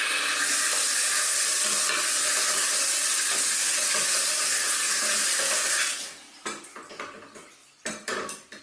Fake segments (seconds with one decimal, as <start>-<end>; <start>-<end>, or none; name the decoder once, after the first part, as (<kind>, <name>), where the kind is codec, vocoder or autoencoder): 3.8-5.9 (vocoder, BigVGAN v2); 7.6-8.6